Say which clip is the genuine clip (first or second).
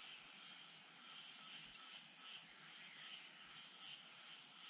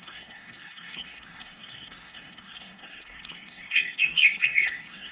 first